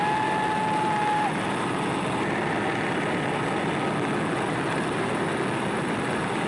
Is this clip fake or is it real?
real